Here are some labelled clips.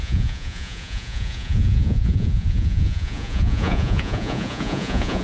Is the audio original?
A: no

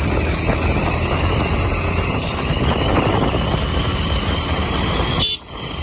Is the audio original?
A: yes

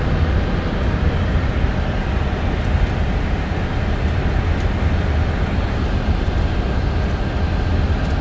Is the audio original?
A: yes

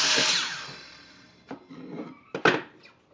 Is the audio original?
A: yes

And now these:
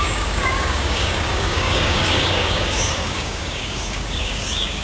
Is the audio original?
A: no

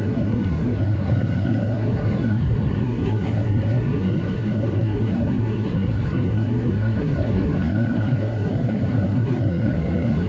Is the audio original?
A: no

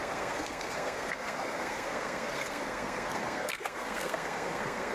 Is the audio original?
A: no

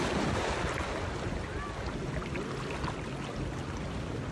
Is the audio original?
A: yes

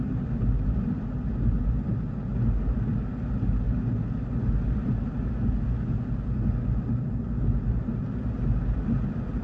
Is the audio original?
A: yes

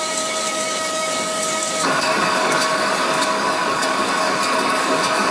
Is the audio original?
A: no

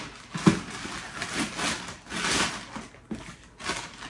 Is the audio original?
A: yes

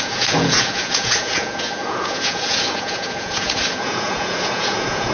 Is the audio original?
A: no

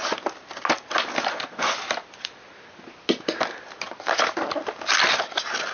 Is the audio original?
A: yes